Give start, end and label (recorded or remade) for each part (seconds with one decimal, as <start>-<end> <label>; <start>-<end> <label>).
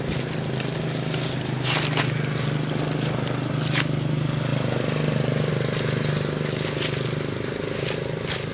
0.0-8.5 recorded